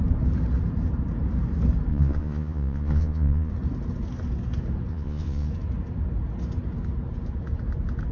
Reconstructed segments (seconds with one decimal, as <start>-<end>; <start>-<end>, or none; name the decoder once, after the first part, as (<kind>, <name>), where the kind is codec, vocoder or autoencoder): 1.9-3.5 (vocoder, Vocos); 4.9-5.5